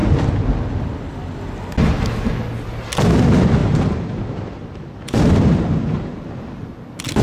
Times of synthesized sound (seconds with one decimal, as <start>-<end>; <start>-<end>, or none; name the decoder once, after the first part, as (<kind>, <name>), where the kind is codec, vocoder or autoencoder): 3.6-6.3 (vocoder, BigVGAN v2)